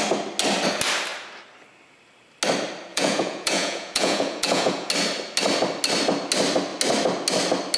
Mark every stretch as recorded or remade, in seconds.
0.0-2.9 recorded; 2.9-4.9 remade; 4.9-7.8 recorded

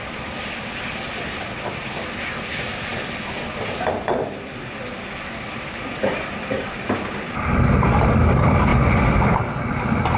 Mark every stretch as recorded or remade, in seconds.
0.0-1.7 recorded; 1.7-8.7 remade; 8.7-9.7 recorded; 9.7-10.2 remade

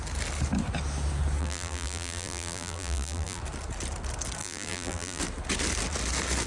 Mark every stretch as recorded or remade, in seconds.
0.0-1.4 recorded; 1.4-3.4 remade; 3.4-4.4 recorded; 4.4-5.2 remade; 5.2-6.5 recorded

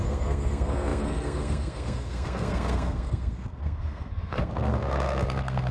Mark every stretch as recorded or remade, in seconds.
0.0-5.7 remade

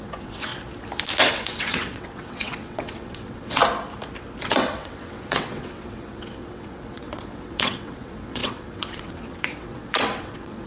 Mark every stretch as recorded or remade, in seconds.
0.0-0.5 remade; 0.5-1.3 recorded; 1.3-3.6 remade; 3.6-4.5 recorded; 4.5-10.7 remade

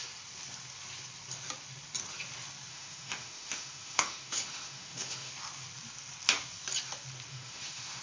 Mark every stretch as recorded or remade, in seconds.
0.0-2.7 recorded; 2.7-5.3 remade; 5.3-7.3 recorded; 7.3-8.0 remade

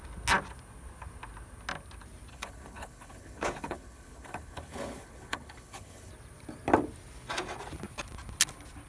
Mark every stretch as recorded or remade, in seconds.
0.0-2.3 recorded; 2.3-6.1 remade; 6.1-8.9 recorded